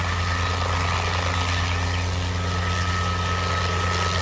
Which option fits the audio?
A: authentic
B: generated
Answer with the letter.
A